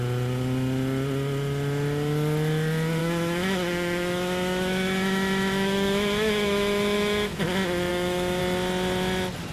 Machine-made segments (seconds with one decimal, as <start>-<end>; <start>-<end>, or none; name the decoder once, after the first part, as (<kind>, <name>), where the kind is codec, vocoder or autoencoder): 3.0-7.4 (autoencoder, DAC-VAE); 7.9-8.4